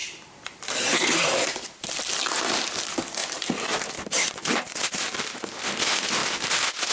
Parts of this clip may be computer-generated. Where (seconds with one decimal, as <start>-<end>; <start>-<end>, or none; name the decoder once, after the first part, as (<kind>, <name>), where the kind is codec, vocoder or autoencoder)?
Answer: 0.0-1.5 (vocoder, BigVGAN v2); 3.2-5.4